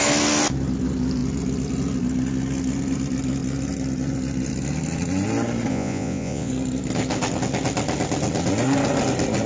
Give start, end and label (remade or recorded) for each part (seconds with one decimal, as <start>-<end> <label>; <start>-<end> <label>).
0.0-5.7 recorded; 5.7-6.5 remade; 6.5-9.5 recorded